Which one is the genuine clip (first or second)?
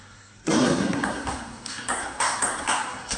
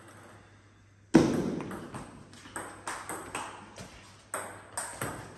second